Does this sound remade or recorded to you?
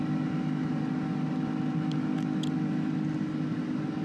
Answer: recorded